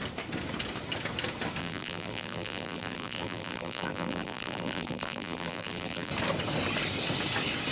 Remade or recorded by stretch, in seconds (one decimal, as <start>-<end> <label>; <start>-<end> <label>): 0.0-1.6 recorded; 1.6-6.1 remade; 6.1-7.7 recorded